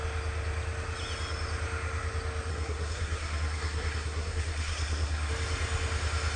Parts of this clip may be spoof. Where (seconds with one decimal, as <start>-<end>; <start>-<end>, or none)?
2.5-5.3

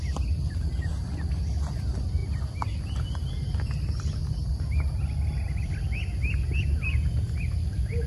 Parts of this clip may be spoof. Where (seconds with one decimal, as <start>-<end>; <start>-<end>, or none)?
none